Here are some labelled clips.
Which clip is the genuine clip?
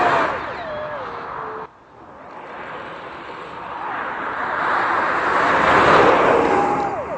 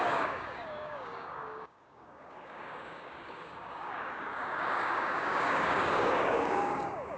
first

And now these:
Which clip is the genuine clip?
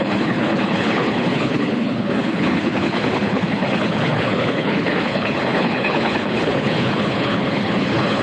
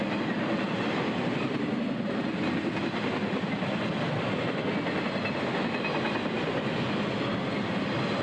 second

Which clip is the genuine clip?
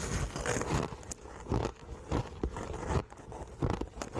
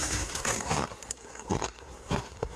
first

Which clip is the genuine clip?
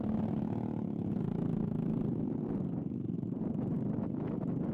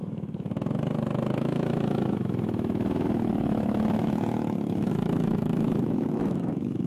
first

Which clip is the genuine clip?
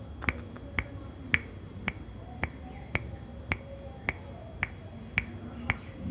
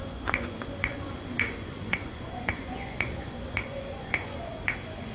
first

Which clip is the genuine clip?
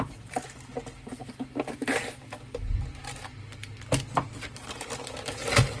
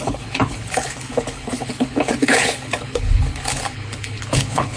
first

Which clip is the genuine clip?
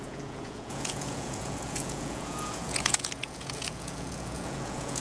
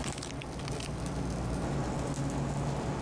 second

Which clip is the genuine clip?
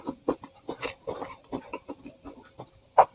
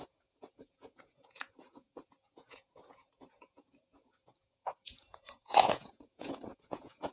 first